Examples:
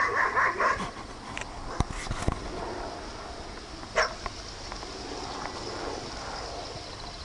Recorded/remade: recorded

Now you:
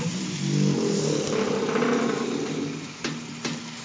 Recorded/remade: recorded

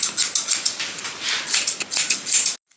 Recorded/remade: recorded